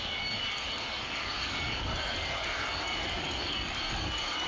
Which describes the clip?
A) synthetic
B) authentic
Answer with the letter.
A